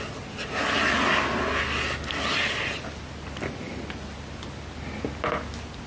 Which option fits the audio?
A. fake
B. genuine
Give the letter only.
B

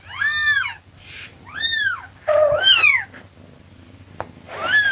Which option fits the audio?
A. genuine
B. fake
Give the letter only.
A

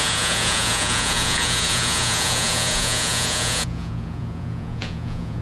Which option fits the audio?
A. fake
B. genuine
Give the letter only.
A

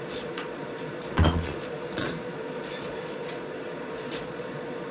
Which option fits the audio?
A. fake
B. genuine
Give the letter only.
A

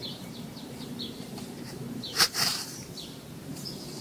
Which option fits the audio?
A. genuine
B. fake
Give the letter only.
B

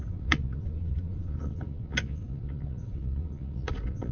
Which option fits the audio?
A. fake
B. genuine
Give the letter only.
A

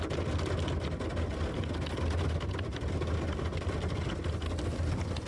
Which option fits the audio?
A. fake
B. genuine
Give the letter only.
B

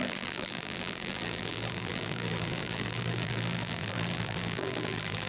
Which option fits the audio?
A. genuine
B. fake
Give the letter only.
B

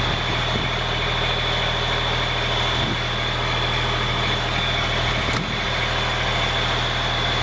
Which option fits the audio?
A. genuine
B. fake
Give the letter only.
A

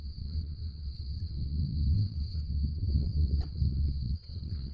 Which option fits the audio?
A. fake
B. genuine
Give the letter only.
A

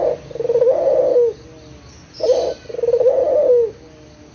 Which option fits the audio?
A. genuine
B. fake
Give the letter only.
A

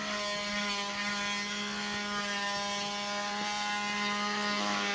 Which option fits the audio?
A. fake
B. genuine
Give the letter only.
B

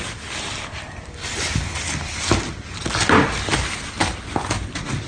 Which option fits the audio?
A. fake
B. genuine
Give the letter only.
B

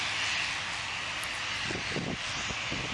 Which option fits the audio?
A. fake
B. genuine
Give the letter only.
B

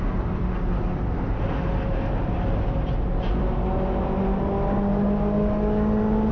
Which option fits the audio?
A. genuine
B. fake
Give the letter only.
A